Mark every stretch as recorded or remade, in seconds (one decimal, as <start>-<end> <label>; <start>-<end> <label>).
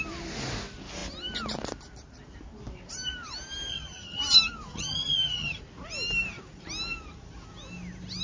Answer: 0.0-3.7 recorded; 3.7-4.2 remade; 4.2-4.7 recorded; 4.7-5.6 remade; 5.6-8.2 recorded